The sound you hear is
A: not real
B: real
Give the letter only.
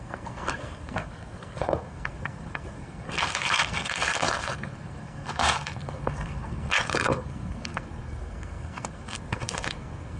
A